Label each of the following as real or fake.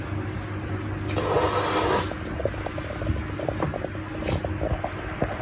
real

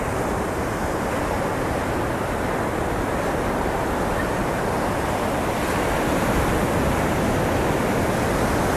real